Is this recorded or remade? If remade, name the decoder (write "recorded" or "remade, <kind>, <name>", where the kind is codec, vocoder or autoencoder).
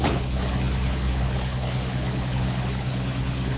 remade, codec, HILCodec